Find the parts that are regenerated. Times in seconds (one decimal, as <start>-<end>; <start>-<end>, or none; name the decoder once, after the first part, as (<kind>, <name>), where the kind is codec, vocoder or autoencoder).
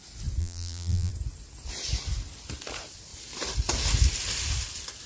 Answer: 0.4-1.1 (vocoder, BigVGAN v2)